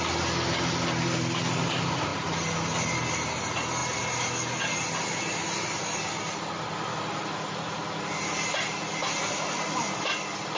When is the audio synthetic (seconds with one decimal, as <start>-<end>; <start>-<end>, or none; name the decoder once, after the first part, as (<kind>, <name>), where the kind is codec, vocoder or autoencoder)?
none